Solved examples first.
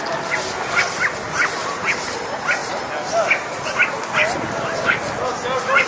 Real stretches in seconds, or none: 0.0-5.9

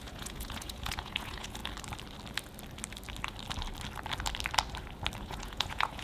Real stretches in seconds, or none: 1.6-5.2